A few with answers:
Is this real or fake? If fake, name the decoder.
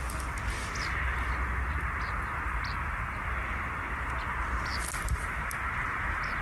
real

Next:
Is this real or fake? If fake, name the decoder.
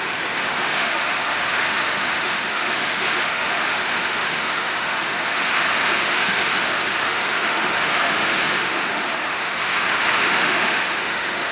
fake, autoencoder, DAC-VAE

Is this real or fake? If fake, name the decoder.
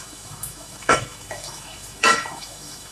fake, autoencoder, DAC-VAE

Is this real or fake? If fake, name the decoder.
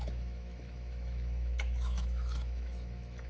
fake, autoencoder, DAC-VAE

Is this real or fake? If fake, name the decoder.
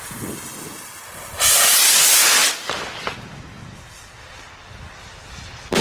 real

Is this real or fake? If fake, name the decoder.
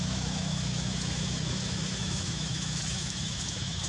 fake, autoencoder, DAC-VAE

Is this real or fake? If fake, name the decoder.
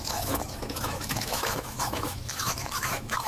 fake, autoencoder, DAC-VAE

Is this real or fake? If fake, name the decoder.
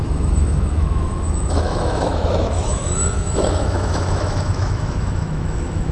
fake, autoencoder, DAC-VAE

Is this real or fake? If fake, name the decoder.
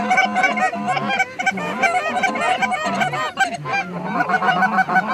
real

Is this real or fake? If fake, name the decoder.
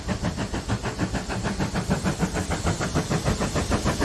real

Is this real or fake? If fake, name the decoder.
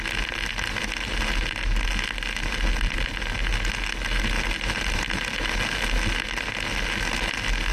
real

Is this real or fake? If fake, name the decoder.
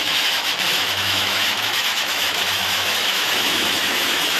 fake, autoencoder, DAC-VAE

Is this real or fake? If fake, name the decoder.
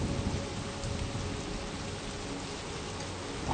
real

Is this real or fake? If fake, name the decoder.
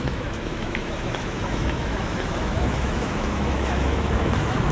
fake, autoencoder, DAC-VAE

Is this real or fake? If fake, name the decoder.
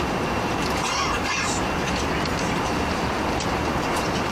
real